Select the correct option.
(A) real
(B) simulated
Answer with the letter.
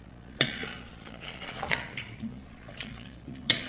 B